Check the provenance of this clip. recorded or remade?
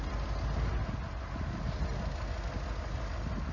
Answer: recorded